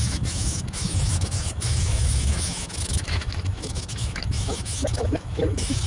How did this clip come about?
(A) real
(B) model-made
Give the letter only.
B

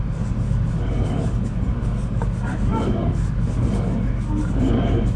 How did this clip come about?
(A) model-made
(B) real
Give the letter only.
A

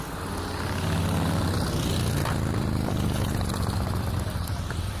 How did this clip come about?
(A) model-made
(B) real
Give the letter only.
B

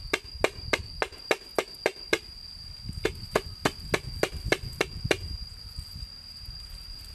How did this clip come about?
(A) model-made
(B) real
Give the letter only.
B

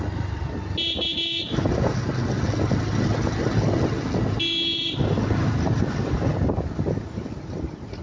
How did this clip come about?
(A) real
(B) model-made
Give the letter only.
A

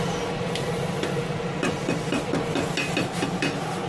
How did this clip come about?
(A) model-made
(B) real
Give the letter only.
B